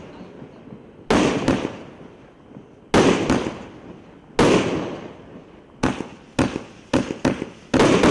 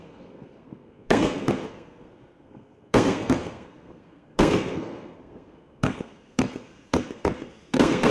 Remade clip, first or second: second